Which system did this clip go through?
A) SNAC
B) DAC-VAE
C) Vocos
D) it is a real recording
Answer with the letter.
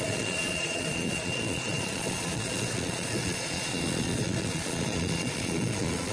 C